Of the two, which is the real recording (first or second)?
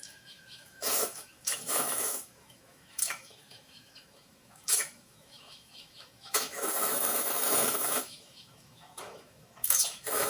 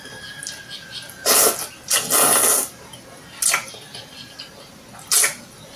second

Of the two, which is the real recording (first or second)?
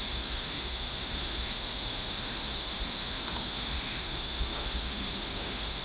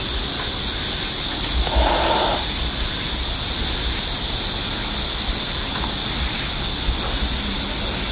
second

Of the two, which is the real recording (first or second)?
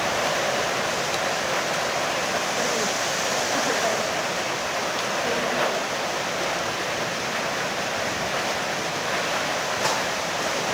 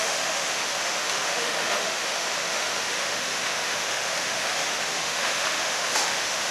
first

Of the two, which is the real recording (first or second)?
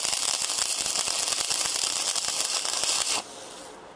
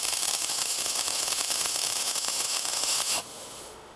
first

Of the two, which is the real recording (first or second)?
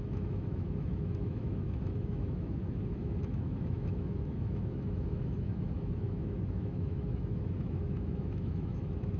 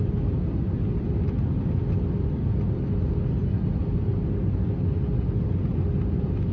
second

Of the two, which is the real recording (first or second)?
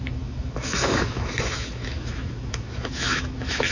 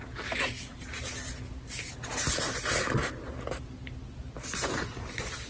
second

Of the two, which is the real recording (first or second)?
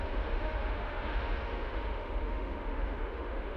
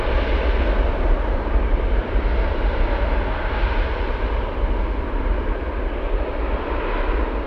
second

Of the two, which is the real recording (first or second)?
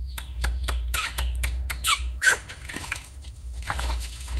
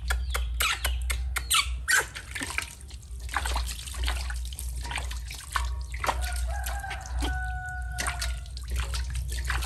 second